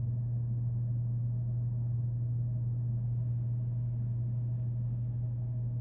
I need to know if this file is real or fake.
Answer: real